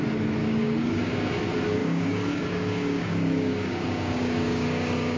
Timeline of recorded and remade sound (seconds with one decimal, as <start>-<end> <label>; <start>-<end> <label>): 0.0-0.4 recorded; 0.4-1.4 remade; 1.4-1.8 recorded; 1.8-5.2 remade